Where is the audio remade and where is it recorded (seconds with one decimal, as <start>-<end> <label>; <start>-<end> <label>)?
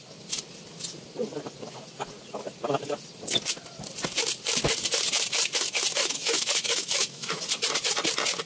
0.0-6.0 recorded; 6.0-7.4 remade; 7.4-8.5 recorded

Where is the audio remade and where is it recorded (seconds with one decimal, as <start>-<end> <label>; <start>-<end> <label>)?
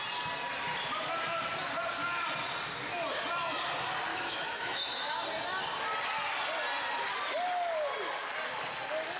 0.0-4.1 recorded; 4.1-5.2 remade; 5.2-9.2 recorded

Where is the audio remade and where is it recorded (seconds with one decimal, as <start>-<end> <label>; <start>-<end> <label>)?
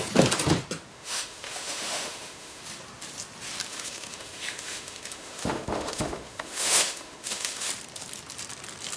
0.0-0.9 recorded; 0.9-2.6 remade; 2.6-3.7 recorded; 3.7-7.7 remade; 7.7-9.0 recorded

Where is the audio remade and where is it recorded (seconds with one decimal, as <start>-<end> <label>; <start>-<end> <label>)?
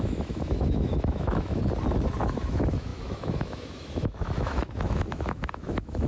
0.0-1.6 remade; 1.6-2.2 recorded; 2.2-6.1 remade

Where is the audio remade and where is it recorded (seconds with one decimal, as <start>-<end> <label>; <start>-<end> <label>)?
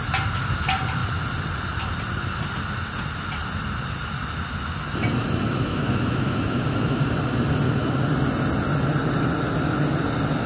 0.0-5.7 recorded; 5.7-7.0 remade; 7.0-10.5 recorded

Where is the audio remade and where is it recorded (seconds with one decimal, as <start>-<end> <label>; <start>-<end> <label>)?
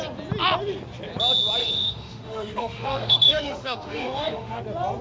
0.0-1.6 recorded; 1.6-4.6 remade; 4.6-5.0 recorded